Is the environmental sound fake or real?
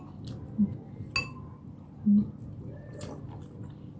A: real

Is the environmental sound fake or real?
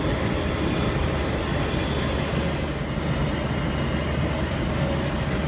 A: real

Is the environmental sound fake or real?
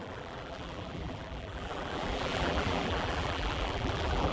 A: fake